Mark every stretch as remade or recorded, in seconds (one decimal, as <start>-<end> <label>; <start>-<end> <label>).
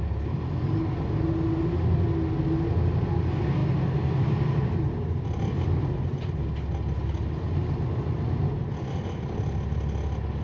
0.0-10.4 recorded